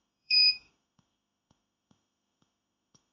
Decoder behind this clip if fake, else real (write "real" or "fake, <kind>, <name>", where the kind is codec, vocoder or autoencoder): fake, autoencoder, DAC-VAE